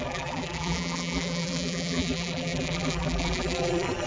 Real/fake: fake